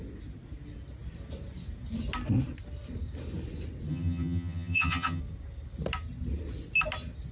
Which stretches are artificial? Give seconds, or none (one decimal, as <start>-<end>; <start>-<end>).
3.9-5.2